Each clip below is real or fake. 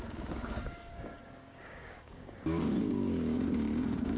fake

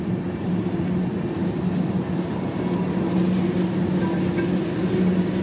real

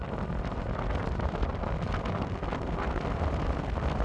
real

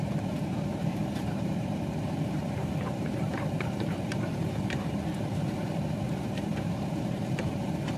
fake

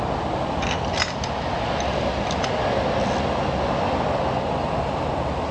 real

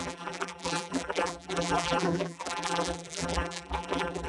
fake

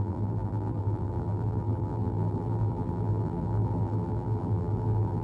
fake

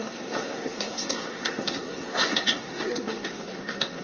fake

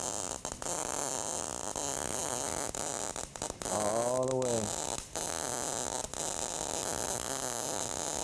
real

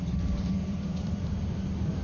real